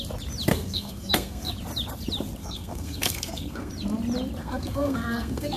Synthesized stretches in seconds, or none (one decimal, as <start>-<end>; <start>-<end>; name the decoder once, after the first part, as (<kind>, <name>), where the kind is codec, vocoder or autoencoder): 0.5-1.5 (codec, SNAC); 2.4-3.7; 4.4-5.6